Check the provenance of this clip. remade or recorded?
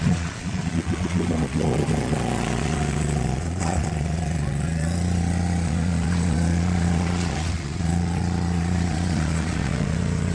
remade